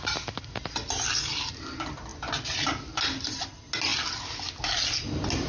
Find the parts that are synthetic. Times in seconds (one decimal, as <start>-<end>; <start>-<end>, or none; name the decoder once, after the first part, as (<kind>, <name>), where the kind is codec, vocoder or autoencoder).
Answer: none